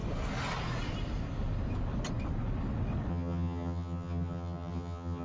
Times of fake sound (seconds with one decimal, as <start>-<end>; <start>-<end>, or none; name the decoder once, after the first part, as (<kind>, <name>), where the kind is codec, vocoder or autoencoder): 3.1-5.2 (vocoder, HiFi-GAN)